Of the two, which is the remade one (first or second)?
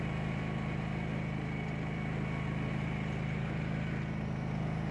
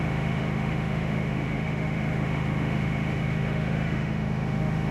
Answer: second